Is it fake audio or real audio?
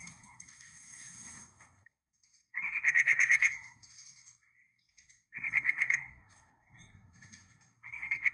fake